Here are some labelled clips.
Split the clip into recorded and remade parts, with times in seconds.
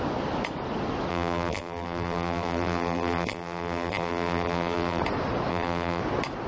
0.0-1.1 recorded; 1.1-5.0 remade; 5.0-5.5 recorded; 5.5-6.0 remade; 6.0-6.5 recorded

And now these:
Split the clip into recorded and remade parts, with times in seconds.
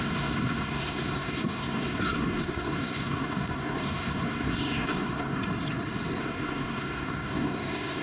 0.0-5.4 remade; 5.4-6.2 recorded; 6.2-8.0 remade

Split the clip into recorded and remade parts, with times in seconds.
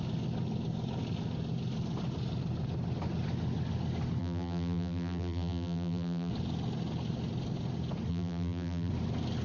0.0-4.2 recorded; 4.2-6.3 remade; 6.3-8.1 recorded; 8.1-8.9 remade; 8.9-9.4 recorded